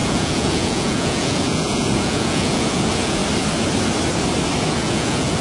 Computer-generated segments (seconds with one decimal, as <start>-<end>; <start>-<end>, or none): 0.0-3.2; 4.7-5.4